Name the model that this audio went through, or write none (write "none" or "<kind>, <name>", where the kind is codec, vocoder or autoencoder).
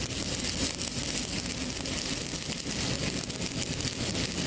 none